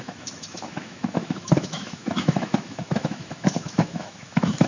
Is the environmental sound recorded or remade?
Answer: remade